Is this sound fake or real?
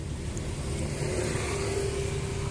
real